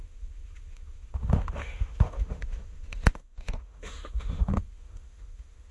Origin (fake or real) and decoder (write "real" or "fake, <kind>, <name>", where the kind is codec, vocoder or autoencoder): fake, autoencoder, DAC-VAE